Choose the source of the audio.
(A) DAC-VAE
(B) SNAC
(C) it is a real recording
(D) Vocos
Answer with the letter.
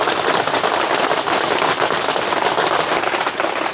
C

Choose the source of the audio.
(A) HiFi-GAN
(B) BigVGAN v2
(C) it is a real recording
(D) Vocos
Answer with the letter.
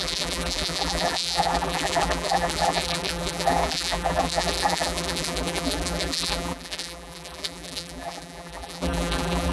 B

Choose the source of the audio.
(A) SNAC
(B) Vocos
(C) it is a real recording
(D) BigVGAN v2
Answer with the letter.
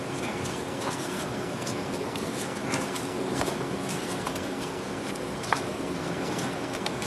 A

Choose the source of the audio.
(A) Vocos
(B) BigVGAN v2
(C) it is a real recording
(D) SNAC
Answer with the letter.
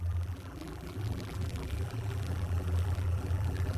B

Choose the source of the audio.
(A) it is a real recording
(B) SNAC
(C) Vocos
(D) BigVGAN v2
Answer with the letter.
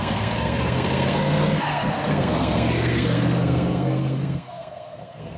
B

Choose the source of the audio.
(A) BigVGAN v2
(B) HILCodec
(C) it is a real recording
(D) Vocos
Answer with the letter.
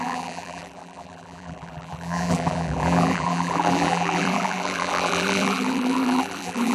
A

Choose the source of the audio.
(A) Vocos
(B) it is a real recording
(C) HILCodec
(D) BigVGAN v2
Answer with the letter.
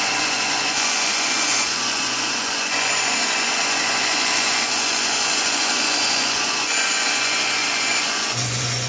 A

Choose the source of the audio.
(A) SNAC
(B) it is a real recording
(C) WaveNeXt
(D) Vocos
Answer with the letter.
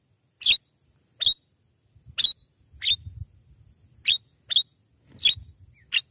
B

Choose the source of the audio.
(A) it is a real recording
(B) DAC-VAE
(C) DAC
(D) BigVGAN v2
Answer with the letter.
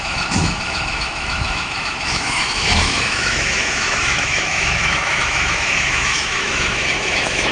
B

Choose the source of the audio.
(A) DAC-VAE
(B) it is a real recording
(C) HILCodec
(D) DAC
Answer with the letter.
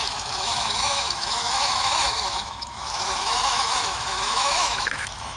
A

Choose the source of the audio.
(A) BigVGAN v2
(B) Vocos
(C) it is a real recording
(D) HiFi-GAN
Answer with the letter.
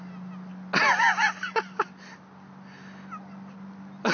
C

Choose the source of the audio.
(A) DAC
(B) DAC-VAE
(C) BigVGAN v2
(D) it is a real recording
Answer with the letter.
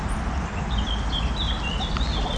D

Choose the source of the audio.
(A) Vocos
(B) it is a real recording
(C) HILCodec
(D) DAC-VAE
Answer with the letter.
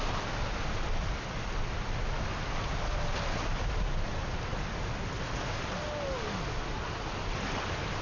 B